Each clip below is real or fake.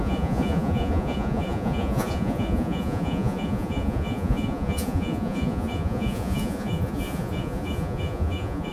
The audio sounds fake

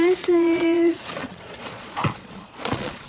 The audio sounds fake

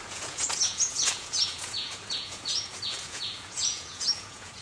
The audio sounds fake